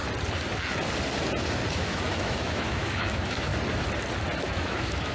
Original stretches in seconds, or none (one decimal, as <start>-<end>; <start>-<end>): 0.0-1.7; 3.5-4.4